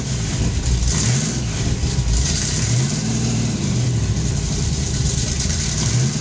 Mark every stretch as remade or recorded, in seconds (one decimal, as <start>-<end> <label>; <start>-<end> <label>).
0.0-3.1 recorded; 3.1-5.6 remade; 5.6-6.2 recorded